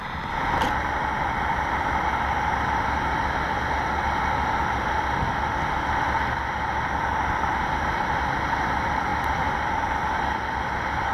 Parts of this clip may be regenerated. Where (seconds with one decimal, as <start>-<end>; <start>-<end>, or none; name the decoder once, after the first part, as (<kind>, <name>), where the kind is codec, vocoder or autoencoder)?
none